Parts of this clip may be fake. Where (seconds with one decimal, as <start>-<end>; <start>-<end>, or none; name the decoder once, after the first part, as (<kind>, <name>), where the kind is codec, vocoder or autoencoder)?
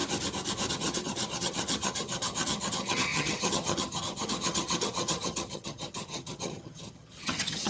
0.7-7.7 (vocoder, HiFi-GAN)